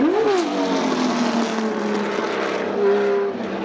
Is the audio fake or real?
real